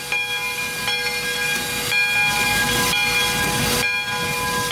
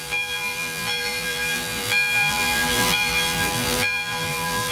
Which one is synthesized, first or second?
second